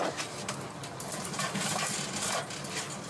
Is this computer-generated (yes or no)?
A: no